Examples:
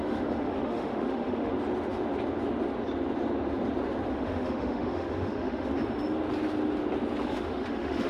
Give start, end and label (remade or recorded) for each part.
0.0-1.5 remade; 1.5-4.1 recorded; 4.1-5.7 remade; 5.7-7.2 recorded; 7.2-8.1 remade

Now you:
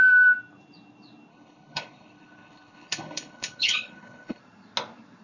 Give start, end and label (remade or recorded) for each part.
0.0-1.3 recorded; 1.3-4.4 remade; 4.4-5.2 recorded

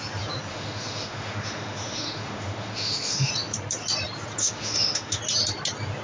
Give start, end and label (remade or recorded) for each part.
0.0-0.5 recorded; 0.5-3.3 remade; 3.3-4.4 recorded; 4.4-5.2 remade; 5.2-6.0 recorded

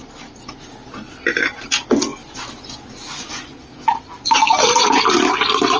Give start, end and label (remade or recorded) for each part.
0.0-5.8 recorded

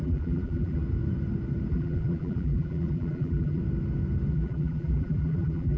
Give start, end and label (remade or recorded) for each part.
0.0-0.8 remade; 0.8-1.7 recorded; 1.7-3.6 remade; 3.6-4.3 recorded; 4.3-5.8 remade

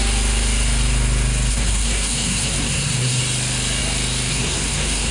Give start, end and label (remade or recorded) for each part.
0.0-1.5 recorded; 1.5-3.2 remade; 3.2-4.3 recorded; 4.3-5.1 remade